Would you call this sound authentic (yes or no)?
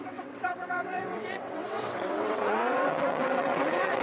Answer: no